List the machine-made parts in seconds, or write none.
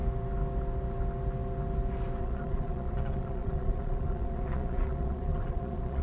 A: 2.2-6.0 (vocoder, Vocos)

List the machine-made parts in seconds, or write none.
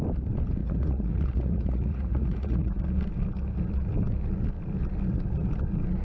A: 0.6-2.8 (vocoder, Vocos)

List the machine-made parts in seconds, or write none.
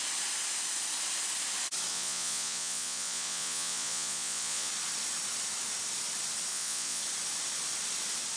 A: 1.9-4.7 (vocoder, Vocos); 6.5-7.0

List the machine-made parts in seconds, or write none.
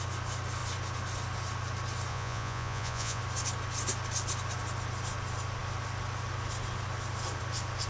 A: 2.1-3.2 (vocoder, Vocos)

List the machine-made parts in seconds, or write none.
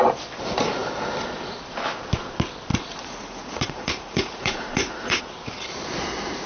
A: 2.7-5.2 (vocoder, Vocos)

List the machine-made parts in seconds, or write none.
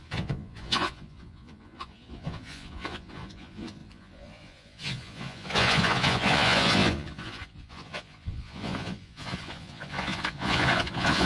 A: 0.0-11.3 (vocoder, Vocos)